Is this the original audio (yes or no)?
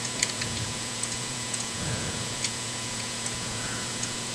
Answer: no